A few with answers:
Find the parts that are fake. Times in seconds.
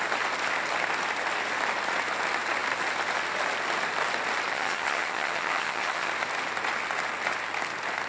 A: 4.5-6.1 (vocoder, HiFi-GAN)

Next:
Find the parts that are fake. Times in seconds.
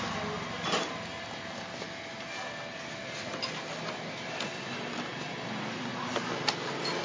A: none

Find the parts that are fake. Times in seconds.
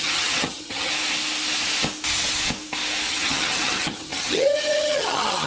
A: 0.0-0.9 (vocoder, HiFi-GAN); 3.1-5.5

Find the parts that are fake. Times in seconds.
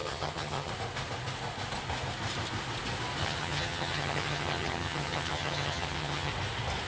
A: 0.0-0.7 (vocoder, HiFi-GAN); 3.2-6.3